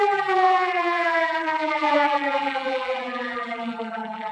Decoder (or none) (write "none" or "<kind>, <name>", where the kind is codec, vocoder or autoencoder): vocoder, BigVGAN v2